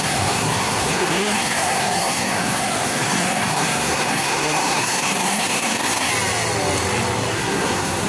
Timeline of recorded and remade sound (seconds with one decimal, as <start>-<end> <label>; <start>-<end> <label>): 0.0-6.1 remade; 6.1-7.3 recorded; 7.3-8.1 remade